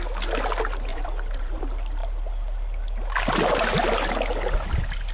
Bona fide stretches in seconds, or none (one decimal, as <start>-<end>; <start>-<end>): 0.0-0.9; 1.6-5.1